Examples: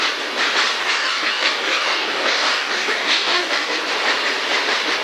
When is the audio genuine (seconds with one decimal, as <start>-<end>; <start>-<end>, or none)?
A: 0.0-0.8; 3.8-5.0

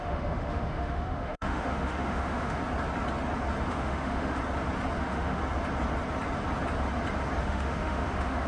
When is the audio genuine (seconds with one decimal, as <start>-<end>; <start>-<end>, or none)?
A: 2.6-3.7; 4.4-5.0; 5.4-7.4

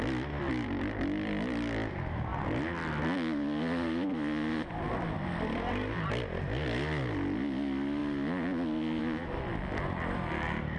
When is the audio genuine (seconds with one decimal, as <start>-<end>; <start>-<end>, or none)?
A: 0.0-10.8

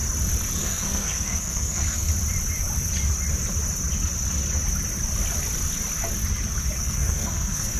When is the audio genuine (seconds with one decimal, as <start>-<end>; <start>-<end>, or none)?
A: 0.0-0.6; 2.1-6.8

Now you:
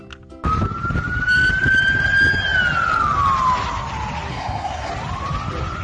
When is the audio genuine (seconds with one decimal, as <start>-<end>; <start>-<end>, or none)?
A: 0.0-4.3; 4.9-5.8